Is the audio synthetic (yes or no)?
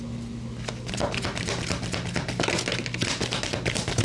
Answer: no